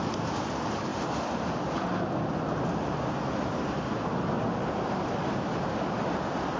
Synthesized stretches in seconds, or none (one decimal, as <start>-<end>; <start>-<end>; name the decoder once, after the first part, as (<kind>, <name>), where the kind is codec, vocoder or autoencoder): none